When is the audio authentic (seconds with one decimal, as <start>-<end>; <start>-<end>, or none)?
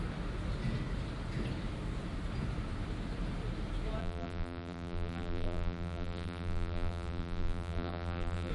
0.0-4.0